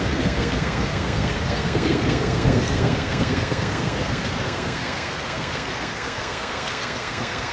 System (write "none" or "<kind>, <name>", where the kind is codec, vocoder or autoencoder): codec, SNAC